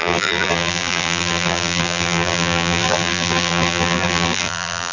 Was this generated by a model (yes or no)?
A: yes